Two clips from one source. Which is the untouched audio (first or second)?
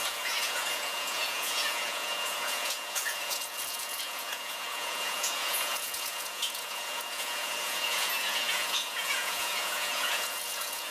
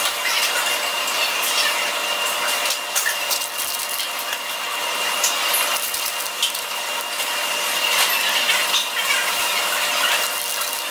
second